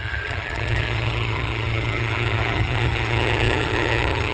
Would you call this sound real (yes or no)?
no